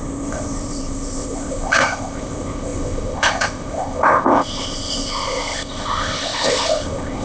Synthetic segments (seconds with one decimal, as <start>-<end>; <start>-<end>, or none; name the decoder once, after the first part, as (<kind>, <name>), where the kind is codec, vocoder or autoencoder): 0.0-7.2 (codec, ZipCodec)